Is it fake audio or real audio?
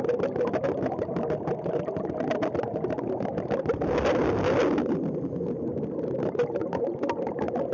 real